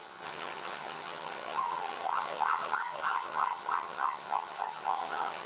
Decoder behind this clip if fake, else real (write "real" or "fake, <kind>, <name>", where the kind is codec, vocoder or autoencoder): fake, vocoder, HiFi-GAN